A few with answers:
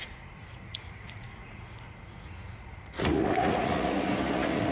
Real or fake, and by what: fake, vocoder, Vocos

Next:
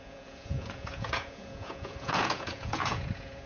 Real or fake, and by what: fake, vocoder, Vocos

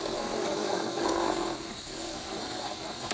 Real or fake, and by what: fake, codec, SNAC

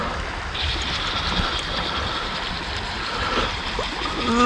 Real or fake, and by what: real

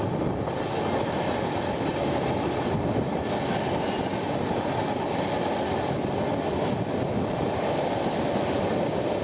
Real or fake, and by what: real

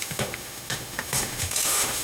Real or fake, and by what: fake, autoencoder, DAC-VAE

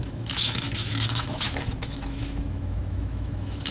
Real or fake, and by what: fake, autoencoder, DAC-VAE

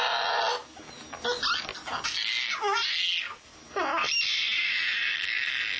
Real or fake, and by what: real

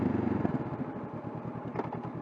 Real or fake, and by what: real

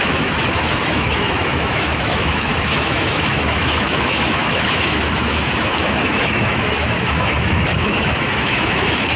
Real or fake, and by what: fake, autoencoder, DAC-VAE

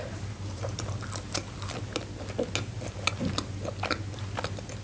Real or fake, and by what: real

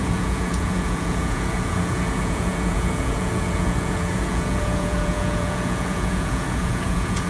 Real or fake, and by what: fake, vocoder, Vocos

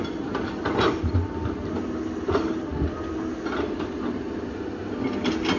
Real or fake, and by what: real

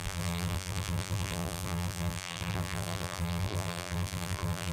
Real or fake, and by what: fake, vocoder, BigVGAN v2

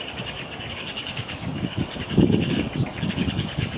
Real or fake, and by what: fake, codec, DAC